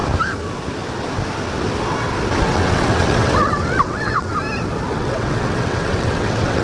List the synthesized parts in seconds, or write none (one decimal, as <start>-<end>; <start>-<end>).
2.4-4.3; 4.9-6.6